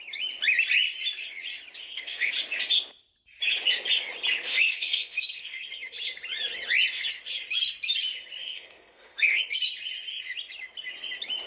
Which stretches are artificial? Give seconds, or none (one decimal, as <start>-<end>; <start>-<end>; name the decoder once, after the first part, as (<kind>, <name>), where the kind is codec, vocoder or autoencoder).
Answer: 1.8-2.3 (codec, SNAC); 4.5-5.7; 8.4-9.4